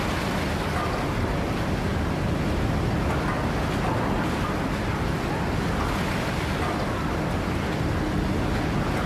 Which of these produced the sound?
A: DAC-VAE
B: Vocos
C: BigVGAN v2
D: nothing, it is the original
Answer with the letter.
D